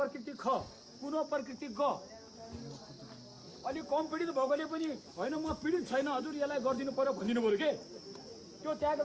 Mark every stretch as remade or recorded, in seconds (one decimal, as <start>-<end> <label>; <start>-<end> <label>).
0.0-3.5 recorded; 3.5-5.7 remade; 5.7-9.0 recorded